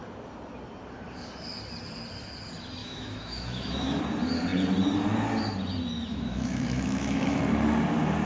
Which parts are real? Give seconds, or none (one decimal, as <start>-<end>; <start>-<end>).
0.0-2.8; 4.0-6.1; 7.4-8.3